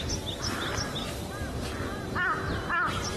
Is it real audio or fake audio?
real